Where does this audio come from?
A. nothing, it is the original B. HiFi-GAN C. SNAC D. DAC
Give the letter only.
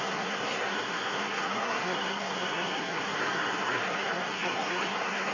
C